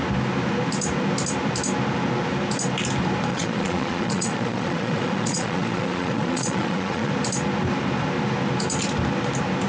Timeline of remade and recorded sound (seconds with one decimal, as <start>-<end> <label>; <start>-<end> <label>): 0.0-3.3 recorded; 3.3-7.1 remade; 7.1-9.7 recorded